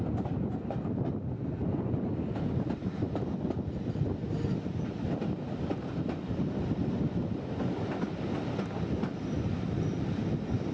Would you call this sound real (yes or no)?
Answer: yes